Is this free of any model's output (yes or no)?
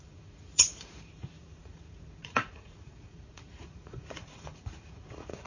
no